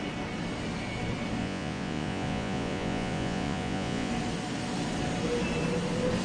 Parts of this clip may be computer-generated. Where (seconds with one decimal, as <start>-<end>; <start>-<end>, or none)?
1.4-4.1